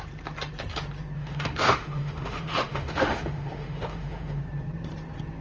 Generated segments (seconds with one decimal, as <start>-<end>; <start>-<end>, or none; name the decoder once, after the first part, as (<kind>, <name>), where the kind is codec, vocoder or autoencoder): 1.2-4.4 (autoencoder, DAC-VAE)